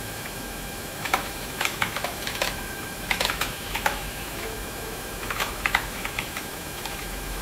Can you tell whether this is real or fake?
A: fake